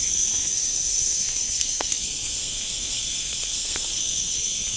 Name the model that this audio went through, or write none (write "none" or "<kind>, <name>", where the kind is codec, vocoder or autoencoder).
codec, SNAC